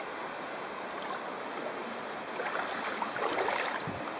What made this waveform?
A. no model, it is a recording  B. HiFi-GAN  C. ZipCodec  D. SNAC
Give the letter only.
A